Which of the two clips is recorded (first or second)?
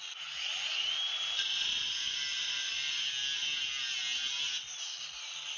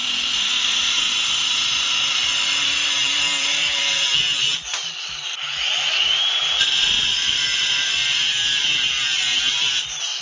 first